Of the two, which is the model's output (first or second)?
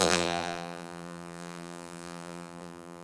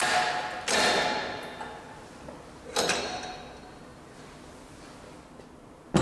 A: first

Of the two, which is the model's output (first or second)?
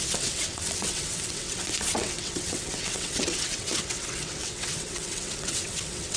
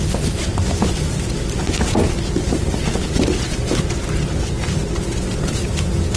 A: first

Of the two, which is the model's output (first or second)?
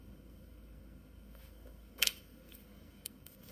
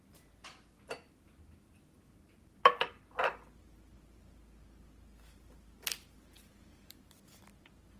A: first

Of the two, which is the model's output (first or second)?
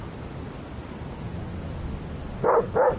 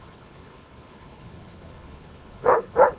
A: second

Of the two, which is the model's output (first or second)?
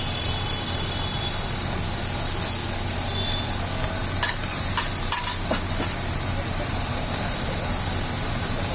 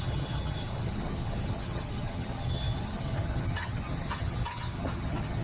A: second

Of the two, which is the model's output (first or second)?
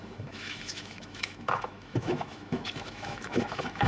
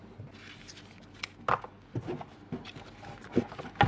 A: first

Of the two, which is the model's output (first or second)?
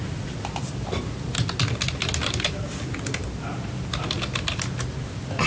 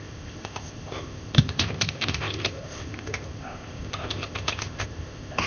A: second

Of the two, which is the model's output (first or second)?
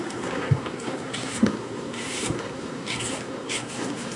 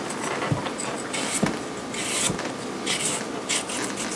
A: first